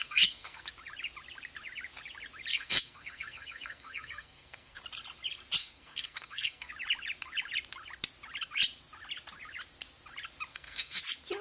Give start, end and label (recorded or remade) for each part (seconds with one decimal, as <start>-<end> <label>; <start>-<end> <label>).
0.0-0.7 remade; 0.7-2.5 recorded; 2.5-4.8 remade; 4.8-5.6 recorded; 5.6-6.7 remade; 6.7-10.5 recorded; 10.5-11.0 remade; 11.0-11.4 recorded